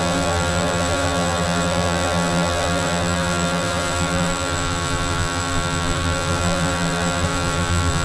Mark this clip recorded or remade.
remade